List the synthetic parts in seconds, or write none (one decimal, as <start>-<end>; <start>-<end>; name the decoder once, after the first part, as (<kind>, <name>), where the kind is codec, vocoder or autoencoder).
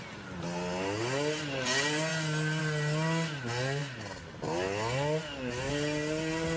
none